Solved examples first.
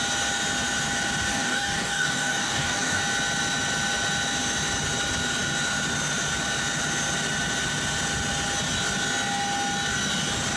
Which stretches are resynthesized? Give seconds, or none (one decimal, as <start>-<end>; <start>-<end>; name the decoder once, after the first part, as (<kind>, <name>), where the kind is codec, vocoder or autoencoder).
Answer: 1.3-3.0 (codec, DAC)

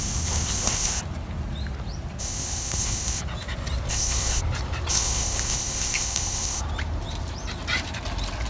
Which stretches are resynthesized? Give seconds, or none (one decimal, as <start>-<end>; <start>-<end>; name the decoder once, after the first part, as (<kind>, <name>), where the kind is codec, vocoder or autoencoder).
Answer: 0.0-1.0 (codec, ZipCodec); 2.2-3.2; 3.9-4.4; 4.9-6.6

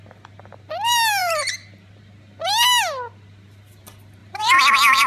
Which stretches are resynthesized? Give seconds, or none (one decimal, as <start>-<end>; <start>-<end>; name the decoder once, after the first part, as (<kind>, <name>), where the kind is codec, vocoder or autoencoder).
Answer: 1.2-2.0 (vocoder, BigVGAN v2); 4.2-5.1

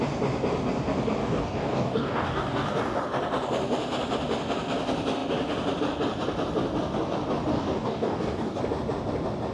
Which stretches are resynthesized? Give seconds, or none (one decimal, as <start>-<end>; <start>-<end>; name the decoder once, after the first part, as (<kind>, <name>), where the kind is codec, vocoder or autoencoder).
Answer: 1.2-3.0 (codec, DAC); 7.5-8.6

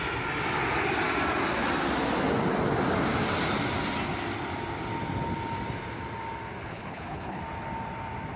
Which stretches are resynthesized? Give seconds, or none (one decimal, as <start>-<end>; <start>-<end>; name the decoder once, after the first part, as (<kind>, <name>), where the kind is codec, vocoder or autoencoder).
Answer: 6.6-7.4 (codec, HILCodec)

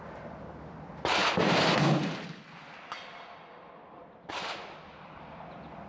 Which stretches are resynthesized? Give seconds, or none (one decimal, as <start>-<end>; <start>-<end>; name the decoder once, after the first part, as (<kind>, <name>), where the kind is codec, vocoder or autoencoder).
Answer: none

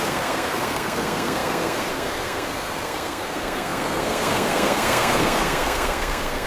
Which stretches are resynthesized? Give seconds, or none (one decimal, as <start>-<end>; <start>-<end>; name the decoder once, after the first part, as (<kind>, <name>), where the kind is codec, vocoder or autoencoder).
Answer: 0.0-6.5 (codec, SNAC)

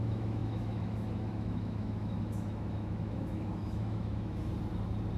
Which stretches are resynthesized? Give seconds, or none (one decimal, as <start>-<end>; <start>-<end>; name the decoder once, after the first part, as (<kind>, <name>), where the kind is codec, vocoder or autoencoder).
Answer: 0.0-4.5 (autoencoder, DAC-VAE)